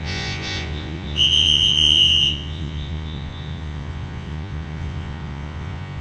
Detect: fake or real fake